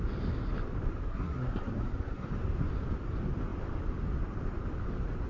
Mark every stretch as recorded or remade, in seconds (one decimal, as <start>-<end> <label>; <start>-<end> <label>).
0.0-1.1 recorded; 1.1-2.3 remade; 2.3-5.3 recorded

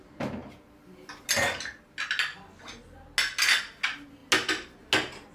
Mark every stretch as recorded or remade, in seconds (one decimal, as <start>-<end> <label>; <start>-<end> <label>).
0.0-5.3 recorded

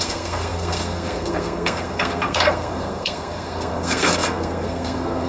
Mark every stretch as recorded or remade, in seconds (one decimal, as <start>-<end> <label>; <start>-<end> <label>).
0.0-5.3 remade

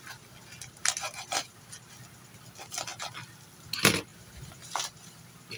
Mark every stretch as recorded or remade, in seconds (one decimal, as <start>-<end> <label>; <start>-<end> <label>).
0.0-0.8 recorded; 0.8-1.7 remade; 1.7-4.1 recorded; 4.1-5.6 remade

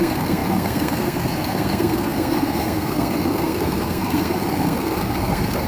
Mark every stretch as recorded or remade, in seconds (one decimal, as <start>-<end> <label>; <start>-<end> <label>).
0.0-5.7 remade

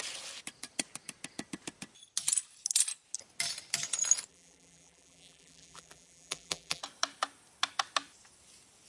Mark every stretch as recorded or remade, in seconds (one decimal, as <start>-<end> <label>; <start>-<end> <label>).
0.0-4.3 recorded; 4.3-6.8 remade; 6.8-8.9 recorded

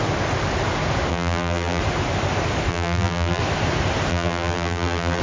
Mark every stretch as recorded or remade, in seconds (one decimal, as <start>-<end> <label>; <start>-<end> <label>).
0.0-1.1 recorded; 1.1-1.8 remade; 1.8-2.7 recorded; 2.7-3.4 remade; 3.4-4.1 recorded; 4.1-5.2 remade

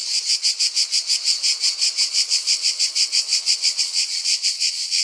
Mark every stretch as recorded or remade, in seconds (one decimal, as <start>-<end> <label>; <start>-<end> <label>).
0.0-2.1 recorded; 2.1-5.0 remade